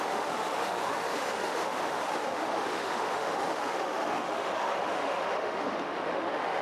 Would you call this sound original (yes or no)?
no